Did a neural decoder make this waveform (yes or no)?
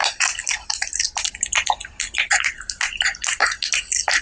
no